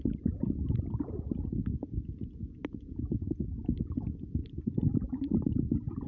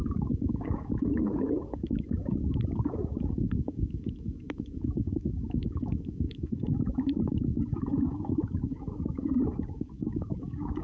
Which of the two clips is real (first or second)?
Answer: first